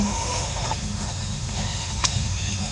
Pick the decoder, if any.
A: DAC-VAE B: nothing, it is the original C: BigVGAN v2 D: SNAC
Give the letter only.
A